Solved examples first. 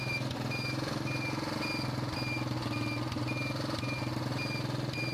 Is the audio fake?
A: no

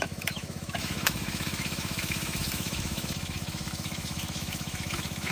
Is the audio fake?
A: yes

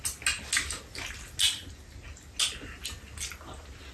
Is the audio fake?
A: no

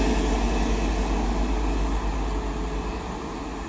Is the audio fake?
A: no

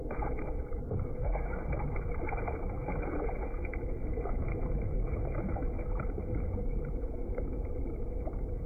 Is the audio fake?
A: yes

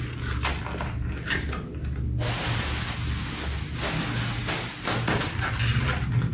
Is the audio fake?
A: no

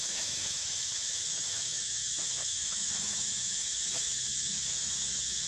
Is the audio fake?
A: yes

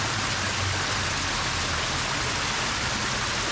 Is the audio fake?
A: no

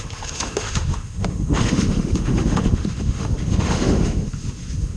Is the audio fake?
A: yes